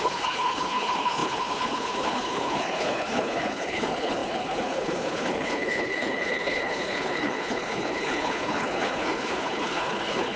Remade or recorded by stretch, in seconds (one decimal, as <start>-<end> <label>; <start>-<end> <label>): 0.0-10.4 remade